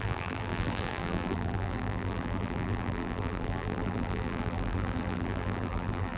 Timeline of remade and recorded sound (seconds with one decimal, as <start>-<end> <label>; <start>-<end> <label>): 0.0-6.2 remade